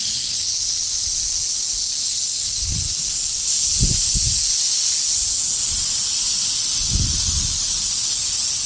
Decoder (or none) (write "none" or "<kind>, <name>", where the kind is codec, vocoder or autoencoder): none